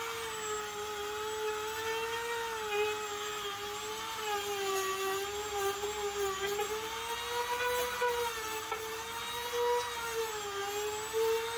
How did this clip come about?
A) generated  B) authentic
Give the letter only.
B